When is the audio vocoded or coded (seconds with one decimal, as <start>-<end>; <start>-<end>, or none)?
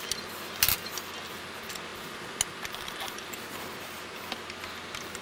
none